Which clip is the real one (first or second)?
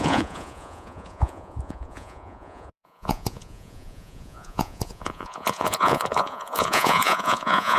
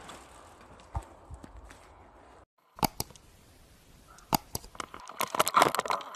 second